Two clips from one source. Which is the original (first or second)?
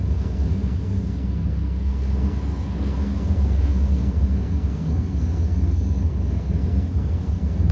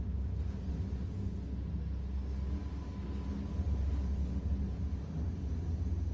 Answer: second